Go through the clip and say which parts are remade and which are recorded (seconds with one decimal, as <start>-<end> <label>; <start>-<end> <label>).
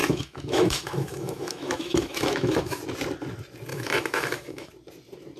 0.0-2.8 remade; 2.8-3.7 recorded; 3.7-4.7 remade; 4.7-5.4 recorded